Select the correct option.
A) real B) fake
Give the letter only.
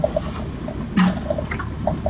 A